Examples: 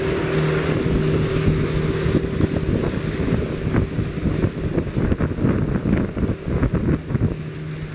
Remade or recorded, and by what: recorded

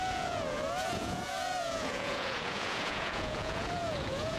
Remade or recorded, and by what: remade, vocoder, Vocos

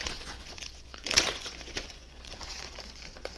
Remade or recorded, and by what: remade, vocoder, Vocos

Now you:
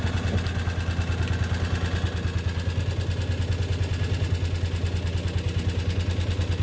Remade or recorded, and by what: recorded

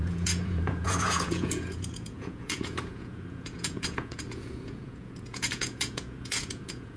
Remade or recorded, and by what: remade, vocoder, Vocos